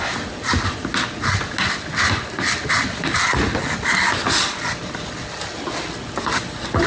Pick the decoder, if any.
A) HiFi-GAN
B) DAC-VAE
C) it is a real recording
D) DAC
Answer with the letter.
C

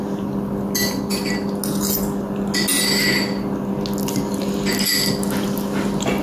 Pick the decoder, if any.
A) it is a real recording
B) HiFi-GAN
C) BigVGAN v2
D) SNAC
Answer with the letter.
A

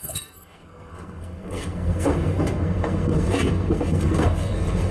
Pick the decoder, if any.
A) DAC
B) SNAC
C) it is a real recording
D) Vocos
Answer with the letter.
B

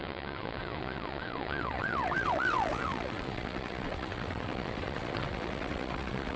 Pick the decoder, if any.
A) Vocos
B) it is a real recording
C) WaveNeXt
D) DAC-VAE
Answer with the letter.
C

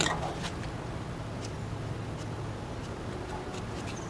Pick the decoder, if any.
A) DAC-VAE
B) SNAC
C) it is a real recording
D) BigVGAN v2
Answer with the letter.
C